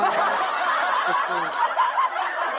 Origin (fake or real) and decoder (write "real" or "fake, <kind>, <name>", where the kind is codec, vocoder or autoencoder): real